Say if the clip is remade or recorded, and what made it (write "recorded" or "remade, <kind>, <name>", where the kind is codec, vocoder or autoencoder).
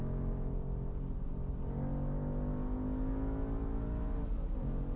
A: recorded